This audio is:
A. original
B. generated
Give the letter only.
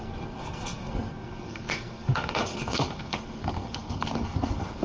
B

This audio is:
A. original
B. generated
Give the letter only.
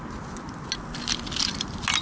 A